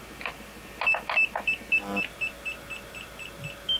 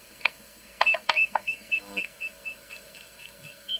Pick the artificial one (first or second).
second